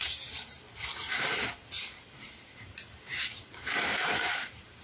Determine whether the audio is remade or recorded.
remade